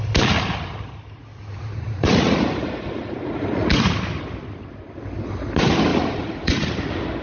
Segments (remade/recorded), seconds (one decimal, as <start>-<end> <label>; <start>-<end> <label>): 0.0-1.3 recorded; 1.3-3.9 remade; 3.9-5.9 recorded; 5.9-6.7 remade; 6.7-7.2 recorded

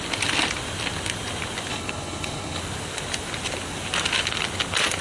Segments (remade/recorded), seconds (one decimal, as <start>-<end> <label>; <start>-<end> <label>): 0.0-1.7 recorded; 1.7-2.6 remade; 2.6-5.0 recorded

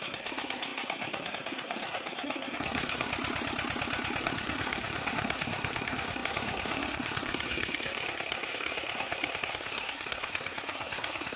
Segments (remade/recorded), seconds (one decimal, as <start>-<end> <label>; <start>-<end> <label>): 0.0-3.1 remade; 3.1-4.2 recorded; 4.2-11.4 remade